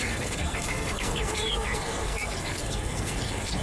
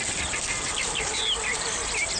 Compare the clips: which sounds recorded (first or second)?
second